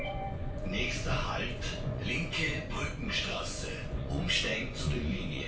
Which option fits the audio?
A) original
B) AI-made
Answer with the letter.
B